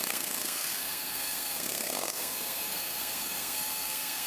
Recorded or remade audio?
remade